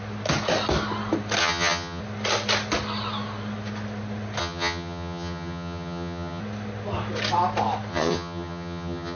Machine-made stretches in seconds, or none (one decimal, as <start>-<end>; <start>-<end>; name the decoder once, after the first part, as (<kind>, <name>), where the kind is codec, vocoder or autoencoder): 1.4-2.0 (vocoder, HiFi-GAN); 4.4-6.4; 7.9-9.2

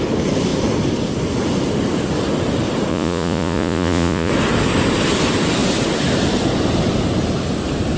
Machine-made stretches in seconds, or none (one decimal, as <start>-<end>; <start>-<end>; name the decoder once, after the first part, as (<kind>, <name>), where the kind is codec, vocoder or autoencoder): 2.9-4.3 (vocoder, Vocos)

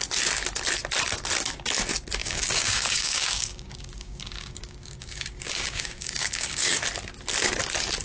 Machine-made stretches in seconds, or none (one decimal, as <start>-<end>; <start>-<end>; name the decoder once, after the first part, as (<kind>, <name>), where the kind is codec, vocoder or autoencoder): 2.2-6.8 (codec, DAC)